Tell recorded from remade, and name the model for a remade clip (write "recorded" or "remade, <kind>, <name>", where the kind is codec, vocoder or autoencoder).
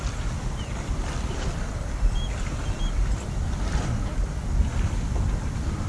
recorded